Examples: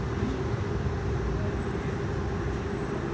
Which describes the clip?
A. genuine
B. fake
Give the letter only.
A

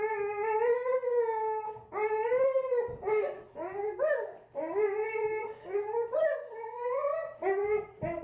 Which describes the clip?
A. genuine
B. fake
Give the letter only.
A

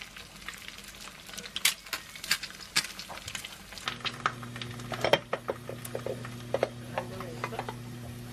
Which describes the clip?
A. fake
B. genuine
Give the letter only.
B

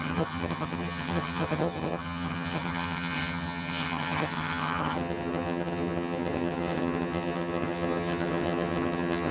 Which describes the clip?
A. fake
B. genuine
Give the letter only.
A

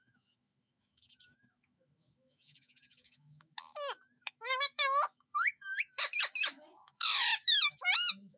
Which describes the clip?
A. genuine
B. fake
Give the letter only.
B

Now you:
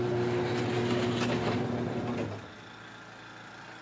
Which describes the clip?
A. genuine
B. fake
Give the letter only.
A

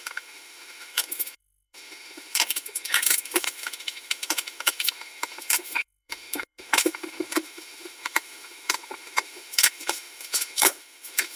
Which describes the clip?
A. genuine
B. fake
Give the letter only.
B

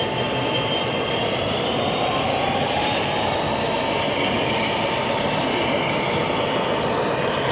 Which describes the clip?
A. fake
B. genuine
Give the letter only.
B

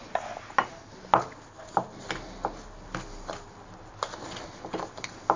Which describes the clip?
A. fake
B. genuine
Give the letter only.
B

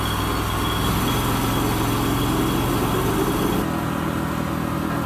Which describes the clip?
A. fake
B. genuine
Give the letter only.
B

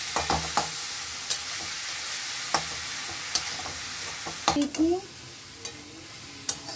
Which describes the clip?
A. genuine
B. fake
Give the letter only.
A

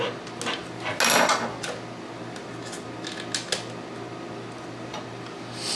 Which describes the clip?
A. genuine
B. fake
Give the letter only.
A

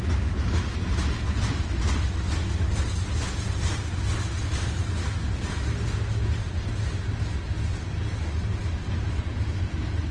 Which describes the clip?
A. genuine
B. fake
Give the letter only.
A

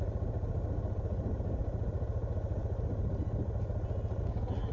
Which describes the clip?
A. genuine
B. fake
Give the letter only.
A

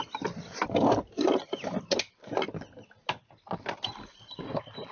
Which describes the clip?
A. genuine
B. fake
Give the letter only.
A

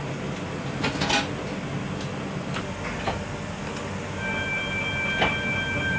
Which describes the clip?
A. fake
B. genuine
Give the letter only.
B